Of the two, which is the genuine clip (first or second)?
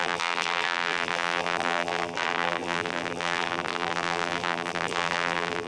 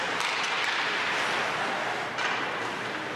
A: second